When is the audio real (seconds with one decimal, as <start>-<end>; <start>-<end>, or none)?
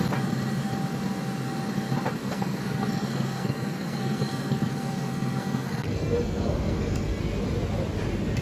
0.0-2.2; 7.2-8.4